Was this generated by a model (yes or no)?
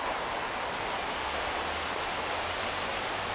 no